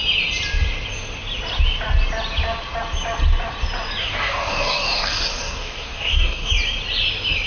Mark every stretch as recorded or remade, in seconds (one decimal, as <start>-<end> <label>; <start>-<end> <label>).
0.0-4.0 recorded; 4.0-6.5 remade; 6.5-7.5 recorded